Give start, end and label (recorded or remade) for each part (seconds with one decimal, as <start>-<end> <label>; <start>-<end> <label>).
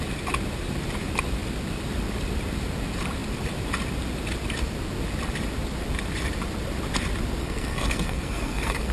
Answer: 0.0-7.4 recorded; 7.4-8.9 remade